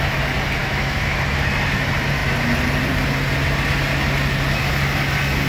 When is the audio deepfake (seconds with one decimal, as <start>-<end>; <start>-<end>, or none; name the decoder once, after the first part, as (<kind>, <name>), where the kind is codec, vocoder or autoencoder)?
0.6-1.2 (autoencoder, DAC-VAE)